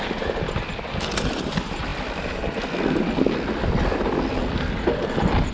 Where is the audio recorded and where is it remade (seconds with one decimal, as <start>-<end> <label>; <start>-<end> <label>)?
0.0-5.5 recorded